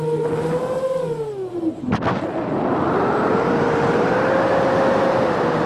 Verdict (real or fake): real